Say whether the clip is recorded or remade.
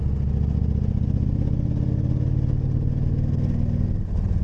recorded